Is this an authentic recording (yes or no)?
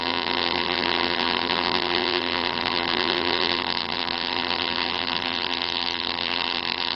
no